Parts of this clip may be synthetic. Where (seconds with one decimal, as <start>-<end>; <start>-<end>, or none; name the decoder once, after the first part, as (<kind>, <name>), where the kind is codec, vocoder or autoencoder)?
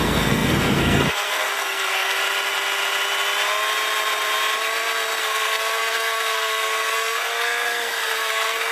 0.0-2.2 (codec, SNAC); 5.2-8.7